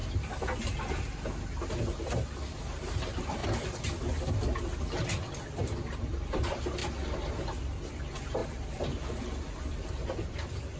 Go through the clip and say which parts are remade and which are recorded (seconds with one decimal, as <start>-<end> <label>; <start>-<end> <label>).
0.0-3.4 recorded; 3.4-4.0 remade; 4.0-8.4 recorded; 8.4-10.8 remade